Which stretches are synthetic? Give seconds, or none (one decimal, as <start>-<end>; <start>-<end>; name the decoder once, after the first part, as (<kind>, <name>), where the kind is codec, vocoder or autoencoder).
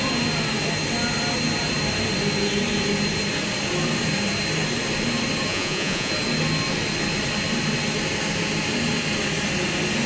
5.5-6.1 (vocoder, Vocos)